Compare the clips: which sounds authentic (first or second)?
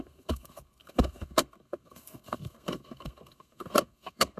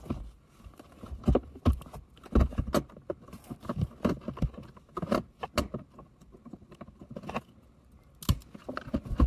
second